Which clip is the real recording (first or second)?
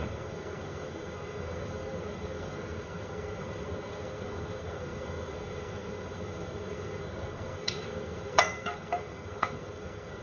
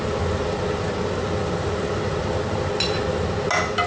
second